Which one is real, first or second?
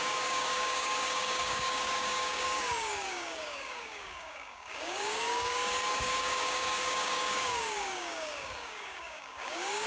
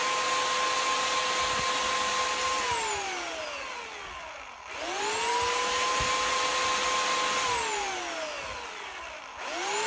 second